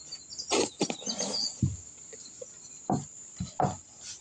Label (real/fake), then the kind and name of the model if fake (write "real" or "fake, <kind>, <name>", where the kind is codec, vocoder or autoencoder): real